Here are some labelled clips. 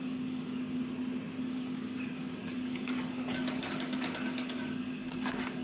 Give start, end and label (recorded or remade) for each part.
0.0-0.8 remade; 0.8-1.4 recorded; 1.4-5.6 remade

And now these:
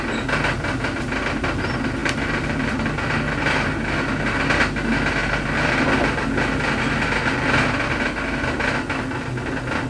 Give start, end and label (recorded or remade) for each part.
0.0-2.0 recorded; 2.0-2.9 remade; 2.9-5.2 recorded; 5.2-5.7 remade; 5.7-9.9 recorded

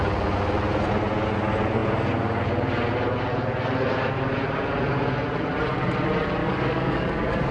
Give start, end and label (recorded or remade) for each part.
0.0-6.4 recorded; 6.4-7.5 remade

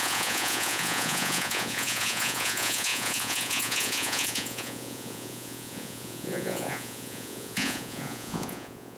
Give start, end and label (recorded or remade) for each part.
0.0-9.0 remade

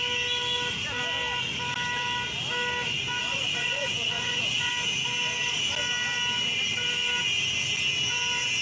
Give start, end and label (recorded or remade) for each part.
0.0-3.2 recorded; 3.2-4.7 remade; 4.7-8.6 recorded

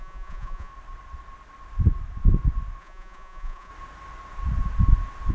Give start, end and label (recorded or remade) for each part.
0.0-0.7 remade; 0.7-2.8 recorded; 2.8-3.7 remade; 3.7-5.3 recorded

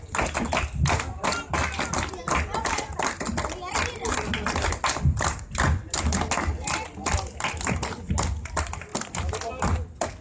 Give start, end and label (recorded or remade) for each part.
0.0-10.2 recorded